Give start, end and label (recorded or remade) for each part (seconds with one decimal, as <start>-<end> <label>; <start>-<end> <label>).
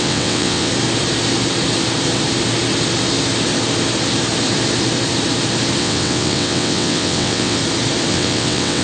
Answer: 0.0-0.7 remade; 0.7-5.8 recorded; 5.8-7.6 remade; 7.6-8.1 recorded; 8.1-8.8 remade